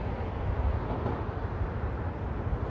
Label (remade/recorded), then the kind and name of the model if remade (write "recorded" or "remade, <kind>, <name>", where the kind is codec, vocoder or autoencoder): recorded